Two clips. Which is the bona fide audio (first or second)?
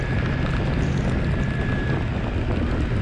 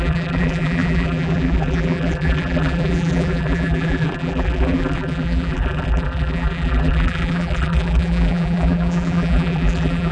first